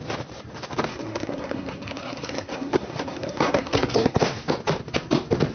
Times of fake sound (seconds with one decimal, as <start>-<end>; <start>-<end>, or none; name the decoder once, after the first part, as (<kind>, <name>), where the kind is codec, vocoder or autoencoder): 0.9-4.2 (codec, SNAC)